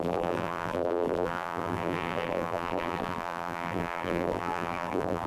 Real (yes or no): no